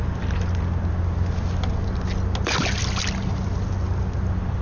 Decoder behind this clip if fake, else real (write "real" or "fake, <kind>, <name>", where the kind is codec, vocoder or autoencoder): real